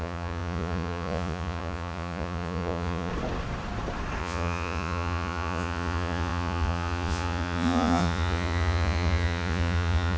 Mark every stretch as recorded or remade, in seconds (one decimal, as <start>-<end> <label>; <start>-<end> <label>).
0.0-3.1 remade; 3.1-4.2 recorded; 4.2-10.2 remade